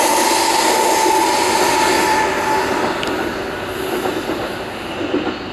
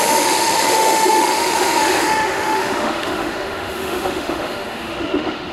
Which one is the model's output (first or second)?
second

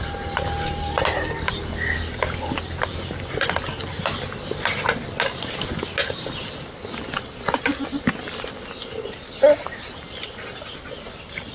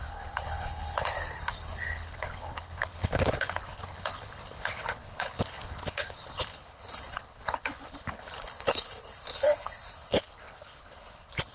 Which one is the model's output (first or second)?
second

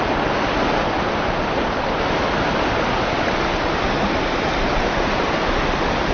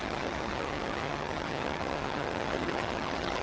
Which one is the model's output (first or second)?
second